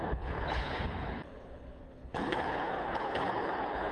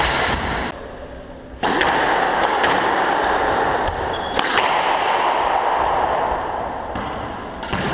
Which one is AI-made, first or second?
first